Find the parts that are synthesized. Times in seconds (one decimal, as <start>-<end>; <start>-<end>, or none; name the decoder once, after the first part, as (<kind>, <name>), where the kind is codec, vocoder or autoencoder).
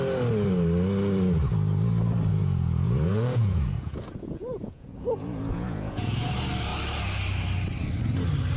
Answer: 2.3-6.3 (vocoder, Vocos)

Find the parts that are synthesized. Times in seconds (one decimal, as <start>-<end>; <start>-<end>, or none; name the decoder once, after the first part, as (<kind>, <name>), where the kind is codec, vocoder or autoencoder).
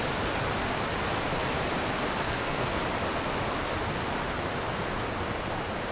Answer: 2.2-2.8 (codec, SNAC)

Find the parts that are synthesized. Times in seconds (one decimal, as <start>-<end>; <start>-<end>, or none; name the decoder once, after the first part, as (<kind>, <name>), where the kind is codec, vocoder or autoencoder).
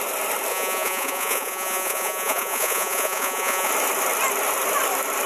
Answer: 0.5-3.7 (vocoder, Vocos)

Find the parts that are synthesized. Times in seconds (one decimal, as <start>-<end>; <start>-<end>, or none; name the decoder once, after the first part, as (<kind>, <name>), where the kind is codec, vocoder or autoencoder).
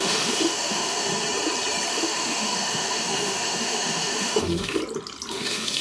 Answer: 0.0-1.1 (autoencoder, DAC-VAE); 1.9-4.8; 5.3-5.8